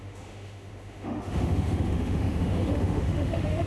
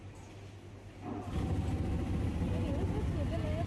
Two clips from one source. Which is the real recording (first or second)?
second